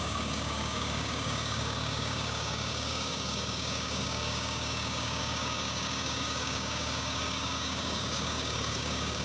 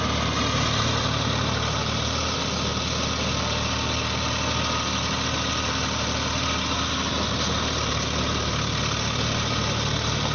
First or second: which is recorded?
second